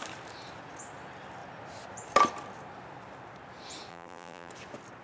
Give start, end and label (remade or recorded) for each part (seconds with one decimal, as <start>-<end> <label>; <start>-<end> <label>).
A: 0.0-3.9 recorded; 3.9-4.5 remade; 4.5-5.0 recorded